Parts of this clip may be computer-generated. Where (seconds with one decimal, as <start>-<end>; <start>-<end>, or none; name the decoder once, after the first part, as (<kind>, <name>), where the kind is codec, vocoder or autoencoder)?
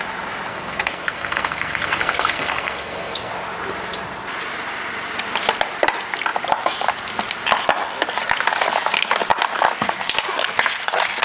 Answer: 0.5-3.3 (codec, SNAC)